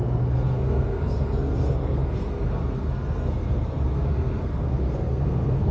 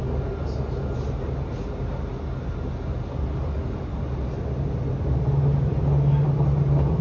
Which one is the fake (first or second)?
first